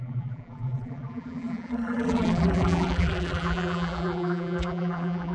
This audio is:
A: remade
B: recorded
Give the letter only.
A